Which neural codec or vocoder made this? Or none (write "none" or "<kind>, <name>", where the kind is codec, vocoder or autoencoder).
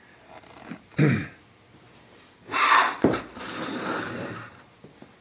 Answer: vocoder, BigVGAN v2